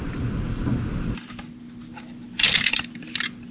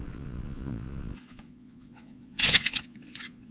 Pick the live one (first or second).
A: first